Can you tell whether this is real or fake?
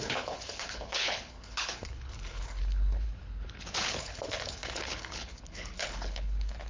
fake